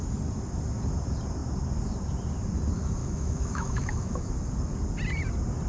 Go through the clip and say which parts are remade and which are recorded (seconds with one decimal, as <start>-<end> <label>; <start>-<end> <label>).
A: 0.0-3.0 recorded; 3.0-4.3 remade; 4.3-5.7 recorded

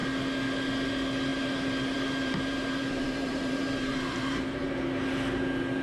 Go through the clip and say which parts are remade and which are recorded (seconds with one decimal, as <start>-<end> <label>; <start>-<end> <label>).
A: 0.0-1.3 recorded; 1.3-4.8 remade; 4.8-5.8 recorded

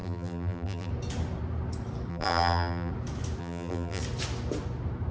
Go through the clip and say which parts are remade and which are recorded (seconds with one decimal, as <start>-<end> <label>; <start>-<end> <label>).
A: 0.0-0.9 remade; 0.9-2.1 recorded; 2.1-2.9 remade; 2.9-3.4 recorded; 3.4-4.0 remade; 4.0-5.1 recorded

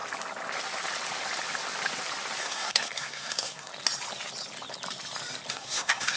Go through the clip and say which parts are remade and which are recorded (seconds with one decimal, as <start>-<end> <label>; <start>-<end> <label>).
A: 0.0-2.4 recorded; 2.4-3.7 remade; 3.7-5.5 recorded; 5.5-6.2 remade

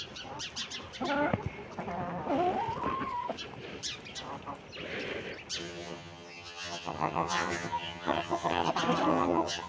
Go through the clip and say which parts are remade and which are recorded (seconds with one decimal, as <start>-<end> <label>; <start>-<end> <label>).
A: 0.0-5.6 recorded; 5.6-8.7 remade; 8.7-9.1 recorded; 9.1-9.7 remade

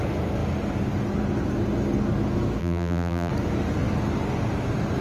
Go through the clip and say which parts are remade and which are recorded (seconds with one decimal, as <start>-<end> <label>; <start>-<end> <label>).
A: 0.0-2.6 recorded; 2.6-3.3 remade; 3.3-5.0 recorded